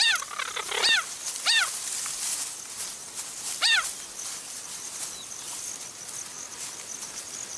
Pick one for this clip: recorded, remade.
recorded